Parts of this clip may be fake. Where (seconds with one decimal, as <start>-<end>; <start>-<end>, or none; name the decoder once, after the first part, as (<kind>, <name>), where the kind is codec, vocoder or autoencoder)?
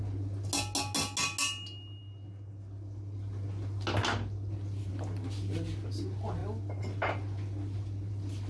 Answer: none